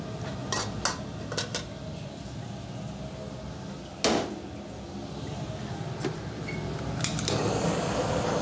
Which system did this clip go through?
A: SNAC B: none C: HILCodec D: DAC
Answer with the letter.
B